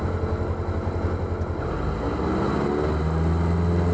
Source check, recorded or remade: recorded